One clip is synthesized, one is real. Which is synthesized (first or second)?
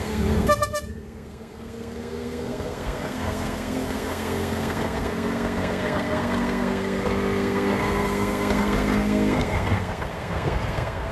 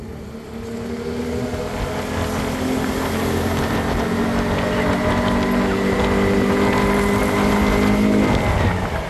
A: first